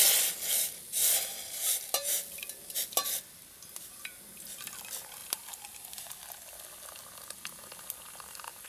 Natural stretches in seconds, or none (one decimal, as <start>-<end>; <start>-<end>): 0.0-8.7